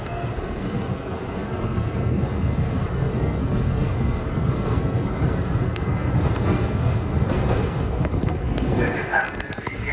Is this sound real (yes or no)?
no